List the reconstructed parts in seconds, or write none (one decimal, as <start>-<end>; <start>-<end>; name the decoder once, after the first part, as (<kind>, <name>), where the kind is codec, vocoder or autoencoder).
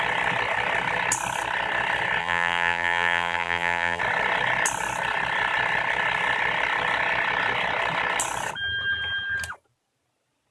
2.2-4.0 (vocoder, BigVGAN v2)